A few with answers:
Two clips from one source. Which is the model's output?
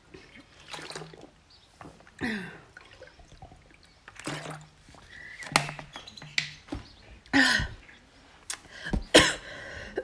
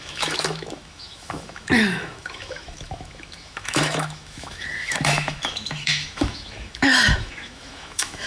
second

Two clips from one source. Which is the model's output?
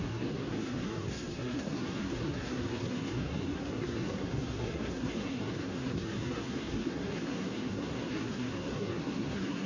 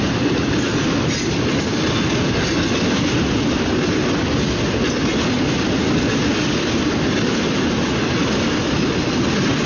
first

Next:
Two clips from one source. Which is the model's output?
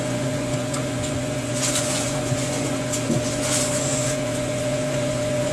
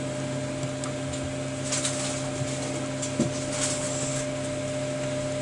first